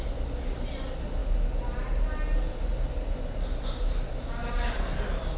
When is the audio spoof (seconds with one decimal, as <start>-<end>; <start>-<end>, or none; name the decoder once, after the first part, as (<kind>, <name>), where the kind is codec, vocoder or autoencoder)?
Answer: none